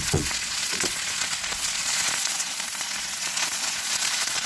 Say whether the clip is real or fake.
fake